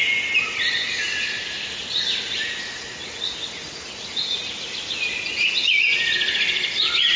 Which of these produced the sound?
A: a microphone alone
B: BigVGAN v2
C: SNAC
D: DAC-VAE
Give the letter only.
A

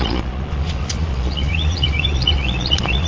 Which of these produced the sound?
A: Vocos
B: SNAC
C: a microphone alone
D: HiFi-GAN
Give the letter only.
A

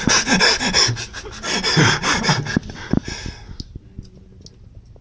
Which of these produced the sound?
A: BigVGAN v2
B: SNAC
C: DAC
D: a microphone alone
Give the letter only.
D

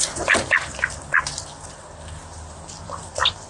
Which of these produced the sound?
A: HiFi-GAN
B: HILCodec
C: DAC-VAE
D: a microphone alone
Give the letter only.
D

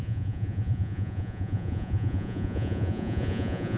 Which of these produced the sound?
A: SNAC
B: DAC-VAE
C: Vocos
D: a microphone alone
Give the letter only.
C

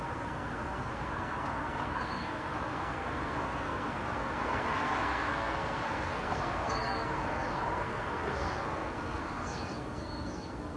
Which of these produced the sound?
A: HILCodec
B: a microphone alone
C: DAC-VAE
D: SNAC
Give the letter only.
D